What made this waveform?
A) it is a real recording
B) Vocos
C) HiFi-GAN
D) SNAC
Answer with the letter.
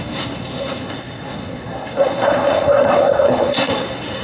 D